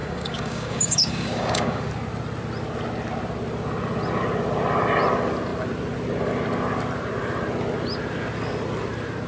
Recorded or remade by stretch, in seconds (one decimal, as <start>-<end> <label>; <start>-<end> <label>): 0.0-1.9 remade; 1.9-9.3 recorded